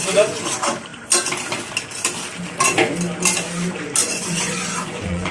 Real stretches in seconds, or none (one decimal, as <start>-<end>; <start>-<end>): 0.0-4.0